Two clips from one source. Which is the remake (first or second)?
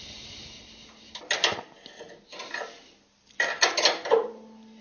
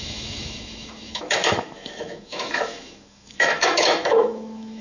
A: second